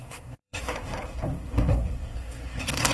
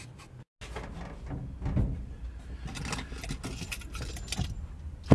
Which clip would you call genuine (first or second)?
second